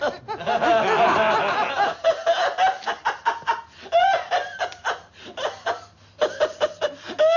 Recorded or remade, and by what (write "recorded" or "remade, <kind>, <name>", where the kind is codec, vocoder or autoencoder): recorded